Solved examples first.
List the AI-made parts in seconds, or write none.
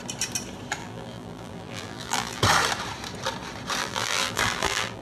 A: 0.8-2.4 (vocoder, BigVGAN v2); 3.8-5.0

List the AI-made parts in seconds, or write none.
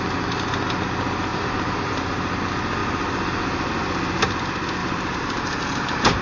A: 1.3-1.9 (vocoder, BigVGAN v2); 2.8-3.7; 4.8-6.2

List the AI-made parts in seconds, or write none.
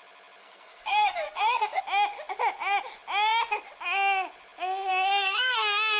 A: 0.4-1.8 (codec, SNAC); 4.9-6.0